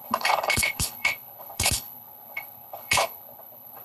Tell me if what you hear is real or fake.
fake